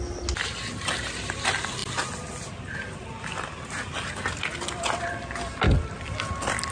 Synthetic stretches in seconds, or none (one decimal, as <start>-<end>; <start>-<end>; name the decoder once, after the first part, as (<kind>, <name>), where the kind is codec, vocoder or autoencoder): none